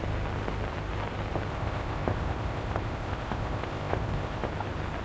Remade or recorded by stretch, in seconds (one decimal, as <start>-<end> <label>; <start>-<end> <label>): 0.0-1.5 recorded; 1.5-4.5 remade; 4.5-5.0 recorded